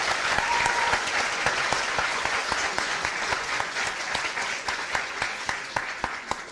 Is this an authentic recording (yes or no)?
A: no